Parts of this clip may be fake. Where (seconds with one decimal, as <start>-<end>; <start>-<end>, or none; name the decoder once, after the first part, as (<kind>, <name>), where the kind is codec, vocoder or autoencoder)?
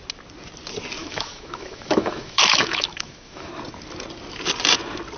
1.0-3.5 (autoencoder, DAC-VAE)